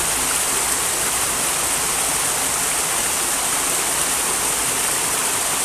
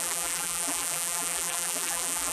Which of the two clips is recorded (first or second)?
first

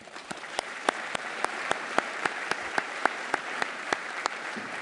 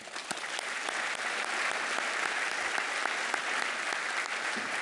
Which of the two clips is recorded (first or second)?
second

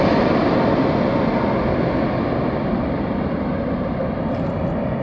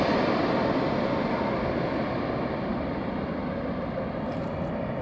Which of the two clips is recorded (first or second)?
first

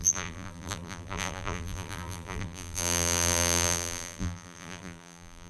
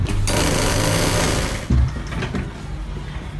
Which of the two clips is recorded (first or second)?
second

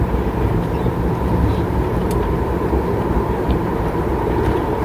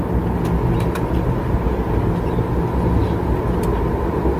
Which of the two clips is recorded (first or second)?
second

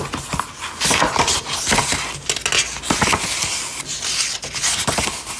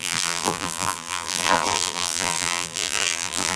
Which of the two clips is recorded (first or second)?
first